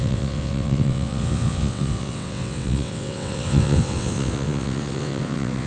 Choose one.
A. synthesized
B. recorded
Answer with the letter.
A